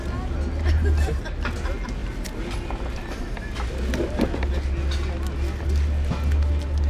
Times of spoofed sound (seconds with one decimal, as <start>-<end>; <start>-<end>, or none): 2.0-3.7